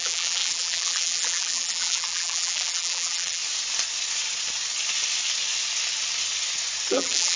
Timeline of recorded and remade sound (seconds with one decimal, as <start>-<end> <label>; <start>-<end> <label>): 0.0-3.4 remade; 3.4-6.9 recorded; 6.9-7.4 remade